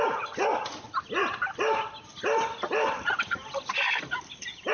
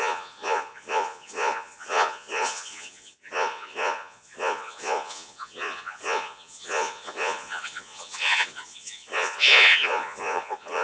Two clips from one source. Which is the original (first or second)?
first